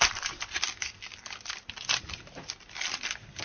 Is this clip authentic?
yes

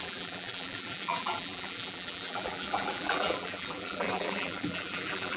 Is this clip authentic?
no